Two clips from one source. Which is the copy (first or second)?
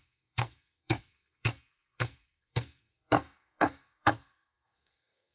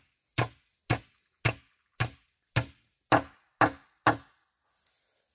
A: first